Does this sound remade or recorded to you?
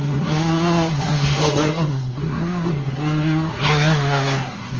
remade